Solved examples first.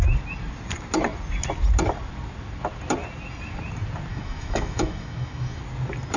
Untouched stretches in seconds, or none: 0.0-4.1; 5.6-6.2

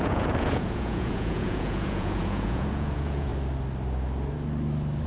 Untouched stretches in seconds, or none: 3.3-5.1